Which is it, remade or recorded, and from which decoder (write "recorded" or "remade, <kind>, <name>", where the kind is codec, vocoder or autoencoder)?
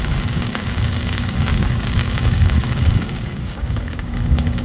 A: remade, codec, DAC